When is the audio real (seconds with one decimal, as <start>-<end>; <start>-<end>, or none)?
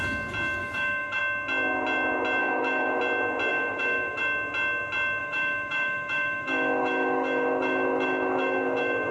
0.0-0.6; 1.2-2.4; 3.0-3.5; 4.2-5.2